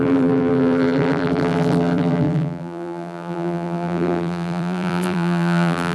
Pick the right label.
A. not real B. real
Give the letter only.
A